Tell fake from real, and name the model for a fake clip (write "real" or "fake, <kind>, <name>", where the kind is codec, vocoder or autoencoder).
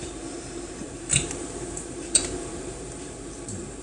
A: fake, vocoder, BigVGAN v2